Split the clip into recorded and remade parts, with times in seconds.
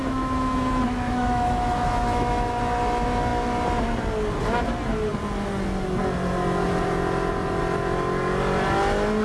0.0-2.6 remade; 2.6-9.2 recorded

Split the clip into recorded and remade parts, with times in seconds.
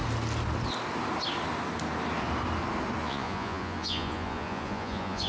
0.0-3.0 recorded; 3.0-5.3 remade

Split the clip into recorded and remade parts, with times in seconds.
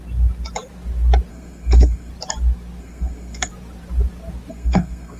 0.0-1.3 recorded; 1.3-2.1 remade; 2.1-2.8 recorded; 2.8-3.5 remade; 3.5-4.5 recorded; 4.5-5.2 remade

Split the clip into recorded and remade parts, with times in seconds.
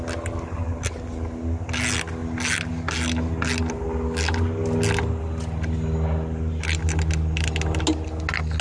0.0-8.6 recorded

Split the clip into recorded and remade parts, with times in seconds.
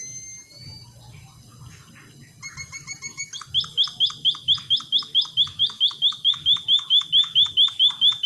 0.0-8.3 recorded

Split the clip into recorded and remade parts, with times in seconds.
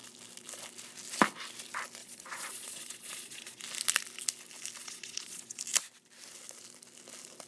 0.0-2.0 recorded; 2.0-3.6 remade; 3.6-4.8 recorded; 4.8-5.6 remade; 5.6-7.5 recorded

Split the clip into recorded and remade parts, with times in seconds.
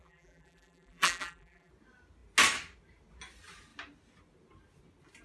0.0-1.7 remade; 1.7-5.2 recorded